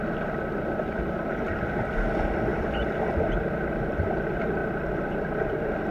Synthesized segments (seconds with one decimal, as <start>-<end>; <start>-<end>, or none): none